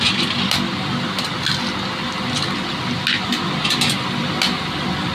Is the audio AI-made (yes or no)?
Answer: no